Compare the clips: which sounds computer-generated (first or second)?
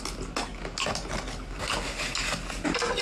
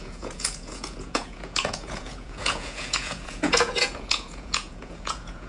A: second